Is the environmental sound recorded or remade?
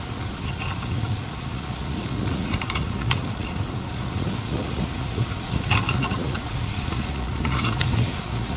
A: remade